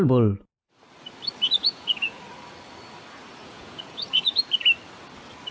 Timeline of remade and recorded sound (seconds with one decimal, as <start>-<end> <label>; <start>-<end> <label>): 0.0-1.6 recorded; 1.6-2.2 remade; 2.2-3.4 recorded; 3.4-4.5 remade; 4.5-5.5 recorded